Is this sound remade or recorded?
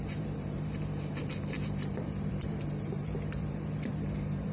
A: remade